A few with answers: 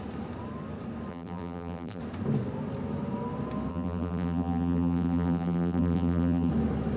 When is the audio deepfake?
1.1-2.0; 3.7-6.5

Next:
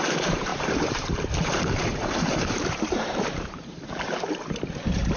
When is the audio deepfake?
0.0-5.2

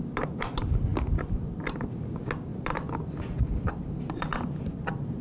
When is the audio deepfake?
2.5-4.0